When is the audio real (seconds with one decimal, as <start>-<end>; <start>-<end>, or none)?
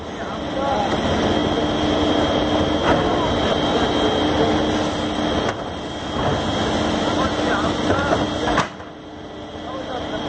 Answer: 0.0-10.3